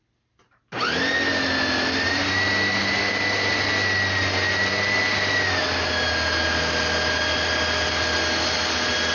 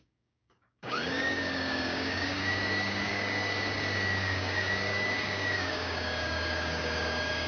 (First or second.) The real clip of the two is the first